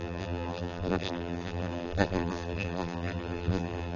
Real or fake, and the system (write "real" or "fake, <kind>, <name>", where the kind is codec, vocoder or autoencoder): fake, vocoder, BigVGAN v2